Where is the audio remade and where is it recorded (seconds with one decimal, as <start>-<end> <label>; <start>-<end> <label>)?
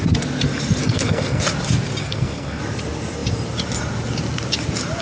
0.0-0.8 recorded; 0.8-1.4 remade; 1.4-2.0 recorded; 2.0-2.6 remade; 2.6-5.0 recorded